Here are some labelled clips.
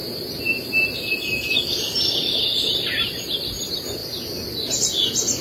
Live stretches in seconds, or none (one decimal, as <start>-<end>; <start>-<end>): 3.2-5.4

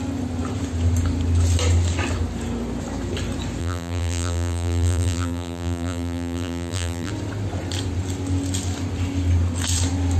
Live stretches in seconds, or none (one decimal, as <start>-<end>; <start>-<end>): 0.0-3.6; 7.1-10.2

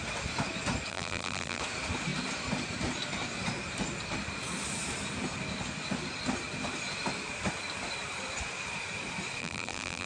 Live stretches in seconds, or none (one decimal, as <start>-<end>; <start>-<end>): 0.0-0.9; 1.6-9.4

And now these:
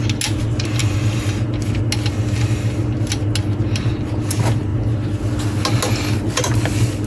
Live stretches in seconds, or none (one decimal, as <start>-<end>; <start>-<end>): 0.0-7.1

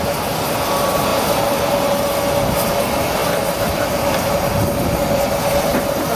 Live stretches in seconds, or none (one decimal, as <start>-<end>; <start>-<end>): 0.0-1.1; 1.7-3.2; 4.3-6.2

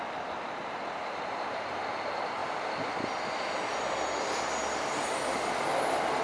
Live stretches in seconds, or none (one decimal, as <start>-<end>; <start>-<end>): 2.4-6.2

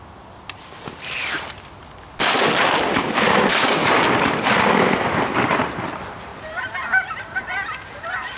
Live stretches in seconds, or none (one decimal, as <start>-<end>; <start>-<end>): 0.0-6.3; 7.5-8.4

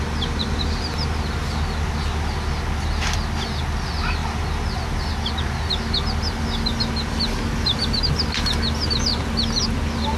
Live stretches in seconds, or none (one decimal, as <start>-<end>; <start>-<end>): 0.0-10.2